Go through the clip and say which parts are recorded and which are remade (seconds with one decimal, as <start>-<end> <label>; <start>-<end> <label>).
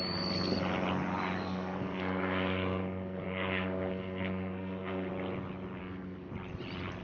0.0-1.4 recorded; 1.4-5.1 remade; 5.1-5.8 recorded; 5.8-6.3 remade; 6.3-7.0 recorded